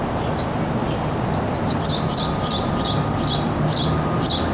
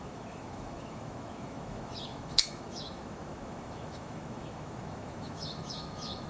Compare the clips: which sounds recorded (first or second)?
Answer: first